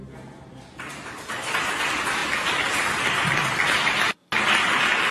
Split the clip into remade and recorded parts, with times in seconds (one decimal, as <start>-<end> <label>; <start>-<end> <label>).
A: 0.0-5.1 recorded